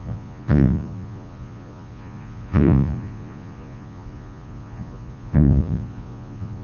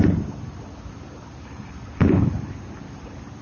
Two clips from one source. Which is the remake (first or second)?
first